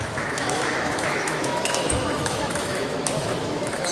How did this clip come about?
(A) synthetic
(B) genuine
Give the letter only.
A